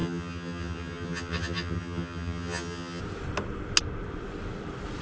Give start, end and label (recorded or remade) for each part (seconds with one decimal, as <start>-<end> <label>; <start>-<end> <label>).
0.0-3.0 remade; 3.0-5.0 recorded